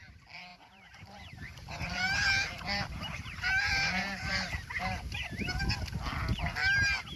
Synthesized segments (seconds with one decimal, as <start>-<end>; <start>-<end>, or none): 0.5-4.8